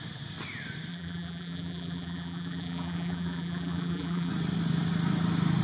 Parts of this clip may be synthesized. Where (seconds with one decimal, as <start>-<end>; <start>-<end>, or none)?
0.9-4.3